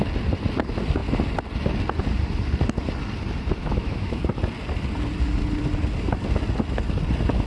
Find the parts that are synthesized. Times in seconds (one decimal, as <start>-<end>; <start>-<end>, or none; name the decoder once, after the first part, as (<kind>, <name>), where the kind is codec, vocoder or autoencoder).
3.6-4.2 (autoencoder, DAC-VAE)